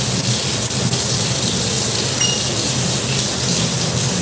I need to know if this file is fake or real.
real